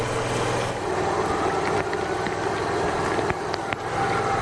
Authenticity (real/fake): real